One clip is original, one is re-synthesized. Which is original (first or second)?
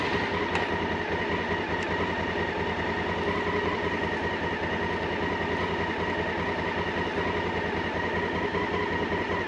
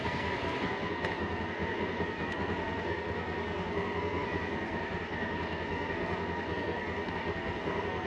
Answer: first